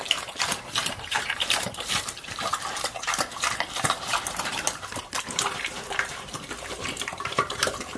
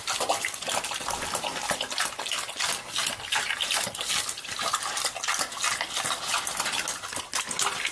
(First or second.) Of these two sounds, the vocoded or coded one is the first